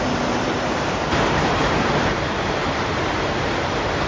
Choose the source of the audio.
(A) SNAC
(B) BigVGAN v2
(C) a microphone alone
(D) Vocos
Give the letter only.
B